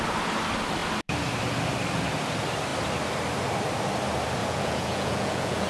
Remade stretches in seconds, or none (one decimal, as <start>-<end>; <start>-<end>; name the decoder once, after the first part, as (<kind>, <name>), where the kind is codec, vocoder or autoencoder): 4.4-5.7 (vocoder, Vocos)